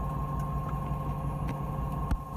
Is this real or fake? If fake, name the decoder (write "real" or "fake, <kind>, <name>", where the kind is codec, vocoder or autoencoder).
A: real